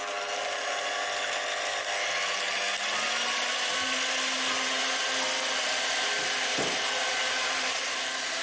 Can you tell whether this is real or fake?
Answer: real